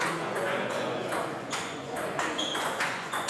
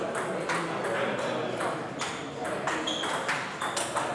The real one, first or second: second